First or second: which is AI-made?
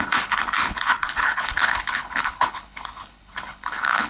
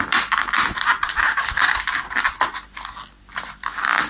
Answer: first